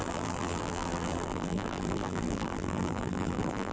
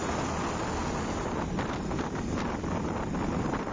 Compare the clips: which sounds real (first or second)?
second